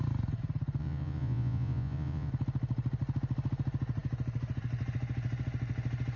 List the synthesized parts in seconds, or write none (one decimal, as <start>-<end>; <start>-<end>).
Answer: 0.8-2.3